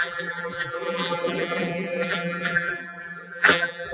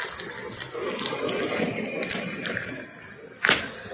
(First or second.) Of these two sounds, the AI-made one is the first